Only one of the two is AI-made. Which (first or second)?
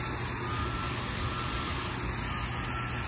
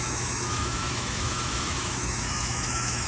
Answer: second